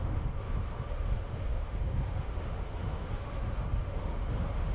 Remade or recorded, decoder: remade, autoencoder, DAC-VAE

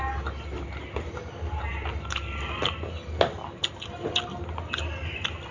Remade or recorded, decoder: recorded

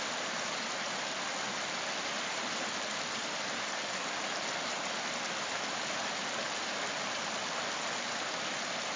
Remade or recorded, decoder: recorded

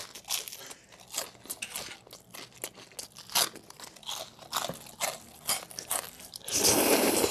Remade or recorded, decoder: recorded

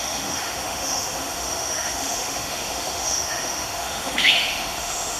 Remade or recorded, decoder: remade, autoencoder, DAC-VAE